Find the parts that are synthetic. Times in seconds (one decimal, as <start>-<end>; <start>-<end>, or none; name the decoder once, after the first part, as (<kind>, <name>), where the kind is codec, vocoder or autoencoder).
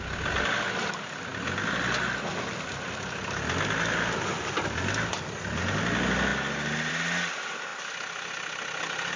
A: none